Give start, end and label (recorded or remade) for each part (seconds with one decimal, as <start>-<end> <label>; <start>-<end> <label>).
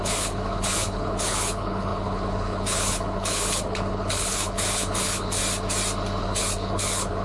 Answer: 0.0-5.4 remade; 5.4-6.2 recorded; 6.2-7.2 remade